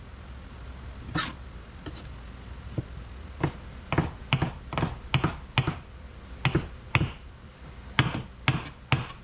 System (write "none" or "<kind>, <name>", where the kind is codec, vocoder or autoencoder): none